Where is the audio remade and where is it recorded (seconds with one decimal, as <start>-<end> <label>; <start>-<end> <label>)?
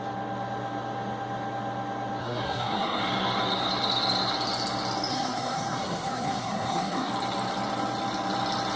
0.0-2.2 recorded; 2.2-3.0 remade; 3.0-5.1 recorded; 5.1-7.1 remade; 7.1-8.8 recorded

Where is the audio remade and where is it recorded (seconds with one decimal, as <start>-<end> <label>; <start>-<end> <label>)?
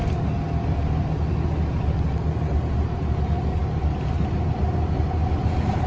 0.0-5.9 recorded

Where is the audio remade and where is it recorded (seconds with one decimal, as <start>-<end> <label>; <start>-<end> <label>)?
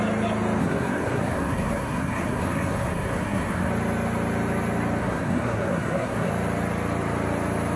0.0-0.6 recorded; 0.6-3.7 remade; 3.7-5.0 recorded; 5.0-6.3 remade; 6.3-7.8 recorded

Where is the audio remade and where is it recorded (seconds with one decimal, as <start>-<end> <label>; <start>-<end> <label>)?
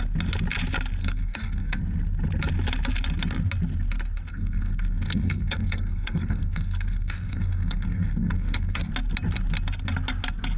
0.0-1.0 recorded; 1.0-1.8 remade; 1.8-4.3 recorded; 4.3-8.9 remade; 8.9-10.6 recorded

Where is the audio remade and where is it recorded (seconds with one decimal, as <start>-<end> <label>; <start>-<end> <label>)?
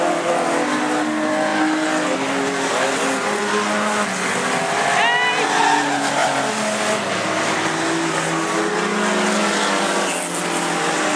0.0-11.2 recorded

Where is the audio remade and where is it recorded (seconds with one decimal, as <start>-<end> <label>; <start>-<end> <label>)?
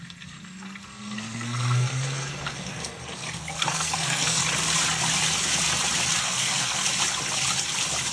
0.0-4.4 remade; 4.4-6.2 recorded; 6.2-6.8 remade; 6.8-8.1 recorded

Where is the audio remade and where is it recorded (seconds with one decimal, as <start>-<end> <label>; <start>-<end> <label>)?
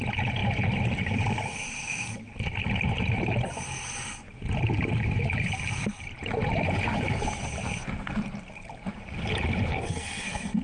0.0-9.7 recorded; 9.7-10.6 remade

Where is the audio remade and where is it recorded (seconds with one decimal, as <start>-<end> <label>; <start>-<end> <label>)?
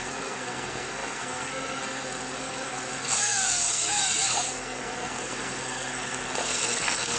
0.0-7.2 remade